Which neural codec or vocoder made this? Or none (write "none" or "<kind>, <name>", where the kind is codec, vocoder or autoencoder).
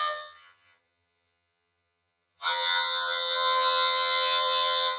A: vocoder, HiFi-GAN